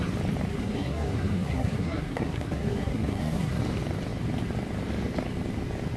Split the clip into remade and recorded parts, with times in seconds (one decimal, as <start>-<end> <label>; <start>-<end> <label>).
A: 0.0-0.5 recorded; 0.5-3.6 remade; 3.6-6.0 recorded